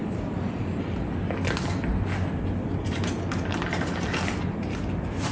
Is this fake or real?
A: real